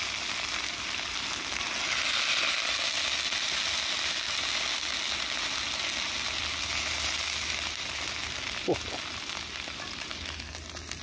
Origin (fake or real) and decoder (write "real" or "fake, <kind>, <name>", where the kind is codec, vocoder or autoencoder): real